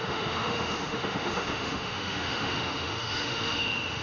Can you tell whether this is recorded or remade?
remade